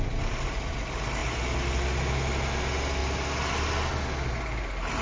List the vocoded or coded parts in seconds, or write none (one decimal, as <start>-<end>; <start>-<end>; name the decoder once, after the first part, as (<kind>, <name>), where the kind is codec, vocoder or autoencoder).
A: none